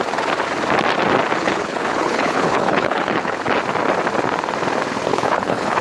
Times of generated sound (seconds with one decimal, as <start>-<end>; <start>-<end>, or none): 1.4-3.4; 5.1-5.8